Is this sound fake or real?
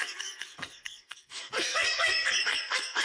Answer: fake